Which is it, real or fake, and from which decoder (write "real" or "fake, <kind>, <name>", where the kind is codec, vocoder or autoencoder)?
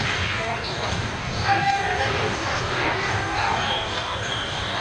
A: fake, codec, DAC